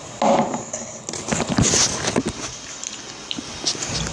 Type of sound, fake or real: real